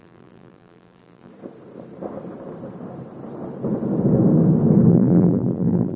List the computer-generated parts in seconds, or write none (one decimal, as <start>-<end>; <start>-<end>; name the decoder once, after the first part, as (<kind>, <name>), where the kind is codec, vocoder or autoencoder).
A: 0.0-1.3 (vocoder, BigVGAN v2); 4.9-6.0